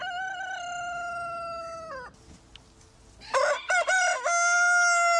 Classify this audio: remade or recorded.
recorded